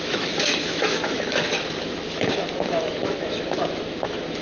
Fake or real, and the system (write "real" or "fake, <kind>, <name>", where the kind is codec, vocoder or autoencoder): fake, autoencoder, DAC-VAE